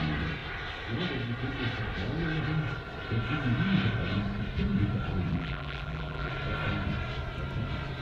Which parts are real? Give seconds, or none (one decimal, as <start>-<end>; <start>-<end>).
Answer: 0.0-5.3; 6.3-8.0